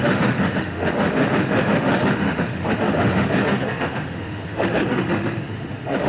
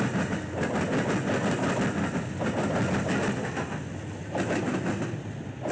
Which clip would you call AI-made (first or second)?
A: first